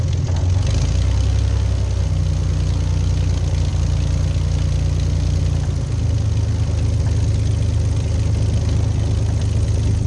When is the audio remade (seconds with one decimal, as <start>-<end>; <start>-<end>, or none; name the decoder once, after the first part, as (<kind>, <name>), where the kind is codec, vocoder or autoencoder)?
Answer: none

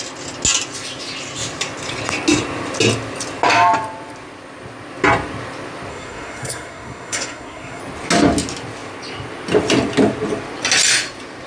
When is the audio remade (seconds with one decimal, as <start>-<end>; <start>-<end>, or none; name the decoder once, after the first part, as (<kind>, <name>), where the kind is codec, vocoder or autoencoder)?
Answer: 5.9-7.8 (codec, SNAC)

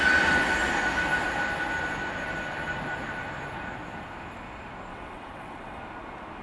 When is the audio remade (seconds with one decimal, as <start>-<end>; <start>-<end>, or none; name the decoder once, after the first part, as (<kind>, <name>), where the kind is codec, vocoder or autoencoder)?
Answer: 4.9-5.8 (vocoder, WaveNeXt)

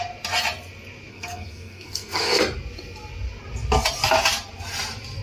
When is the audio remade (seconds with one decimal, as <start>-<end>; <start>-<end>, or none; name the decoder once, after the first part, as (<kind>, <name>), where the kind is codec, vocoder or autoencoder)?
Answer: 1.1-2.4 (codec, SNAC)

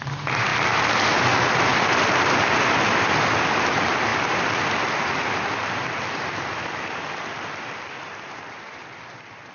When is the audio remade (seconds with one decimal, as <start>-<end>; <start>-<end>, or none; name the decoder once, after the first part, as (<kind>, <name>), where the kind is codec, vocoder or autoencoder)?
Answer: 1.7-3.1 (vocoder, BigVGAN v2); 4.1-9.5

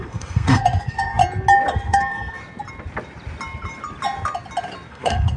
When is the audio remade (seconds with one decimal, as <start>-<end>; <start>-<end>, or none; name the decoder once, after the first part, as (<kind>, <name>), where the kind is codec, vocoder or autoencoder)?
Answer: 0.0-1.2 (codec, SNAC); 1.7-2.4; 4.9-5.4

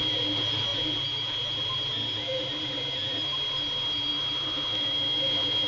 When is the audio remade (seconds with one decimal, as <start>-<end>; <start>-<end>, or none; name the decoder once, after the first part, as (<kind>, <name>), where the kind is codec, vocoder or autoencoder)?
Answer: none

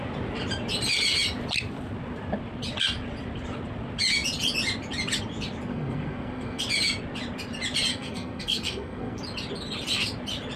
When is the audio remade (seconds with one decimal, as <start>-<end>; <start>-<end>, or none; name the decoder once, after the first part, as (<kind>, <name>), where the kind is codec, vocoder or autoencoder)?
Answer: 5.7-6.6 (codec, SNAC); 7.9-9.2